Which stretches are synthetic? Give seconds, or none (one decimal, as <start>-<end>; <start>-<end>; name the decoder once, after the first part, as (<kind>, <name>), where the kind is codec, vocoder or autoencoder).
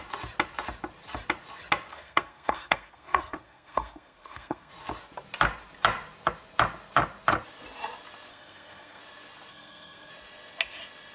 1.9-4.7 (codec, SNAC); 8.3-9.0; 9.5-10.1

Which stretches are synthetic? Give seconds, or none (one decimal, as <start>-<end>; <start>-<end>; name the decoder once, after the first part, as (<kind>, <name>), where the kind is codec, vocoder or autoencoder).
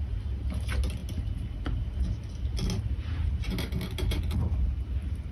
none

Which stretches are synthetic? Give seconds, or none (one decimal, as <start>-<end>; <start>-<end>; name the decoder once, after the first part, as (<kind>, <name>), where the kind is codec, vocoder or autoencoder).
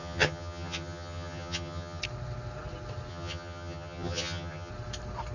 0.0-2.0 (vocoder, HiFi-GAN); 3.1-4.7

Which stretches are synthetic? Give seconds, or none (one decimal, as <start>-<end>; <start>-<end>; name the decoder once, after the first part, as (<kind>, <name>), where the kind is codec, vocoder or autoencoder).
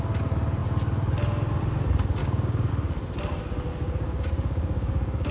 2.2-2.7 (codec, DAC); 3.7-5.3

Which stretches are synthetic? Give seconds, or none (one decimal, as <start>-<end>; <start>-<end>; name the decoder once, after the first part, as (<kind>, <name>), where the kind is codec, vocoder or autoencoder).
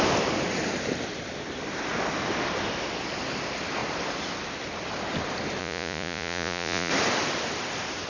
5.6-6.9 (vocoder, Vocos)